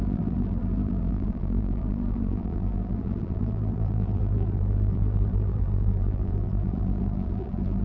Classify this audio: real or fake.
fake